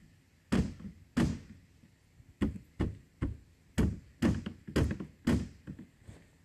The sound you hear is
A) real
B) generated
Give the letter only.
A